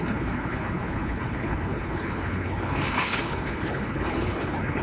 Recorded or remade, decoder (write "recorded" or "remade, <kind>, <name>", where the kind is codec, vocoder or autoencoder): remade, codec, HILCodec